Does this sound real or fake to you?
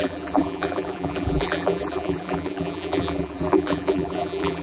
fake